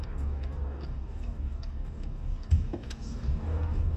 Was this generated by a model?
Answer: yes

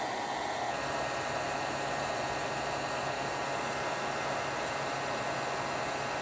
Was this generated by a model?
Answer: no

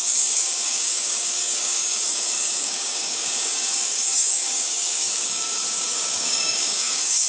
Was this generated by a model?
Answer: yes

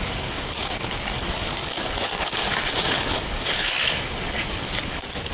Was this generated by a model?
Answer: yes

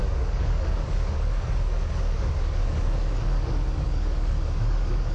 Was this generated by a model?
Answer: yes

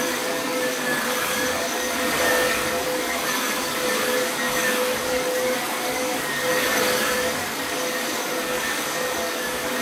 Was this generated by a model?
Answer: yes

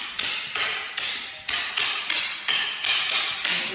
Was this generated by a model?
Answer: no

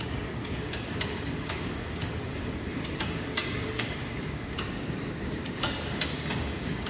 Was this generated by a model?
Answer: yes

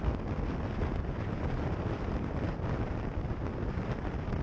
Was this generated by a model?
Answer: no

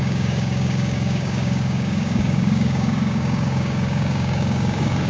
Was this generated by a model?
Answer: yes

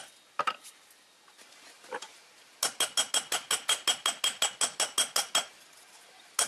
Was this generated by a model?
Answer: no